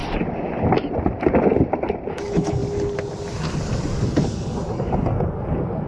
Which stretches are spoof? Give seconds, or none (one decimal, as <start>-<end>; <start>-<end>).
2.1-2.6; 4.0-5.9